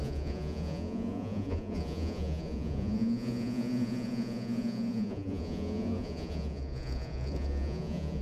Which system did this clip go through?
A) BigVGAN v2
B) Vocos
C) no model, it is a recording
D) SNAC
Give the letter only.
B